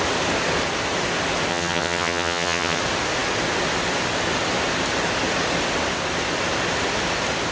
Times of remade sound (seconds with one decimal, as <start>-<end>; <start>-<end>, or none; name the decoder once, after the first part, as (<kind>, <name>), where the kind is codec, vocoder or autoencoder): 1.5-2.8 (vocoder, HiFi-GAN)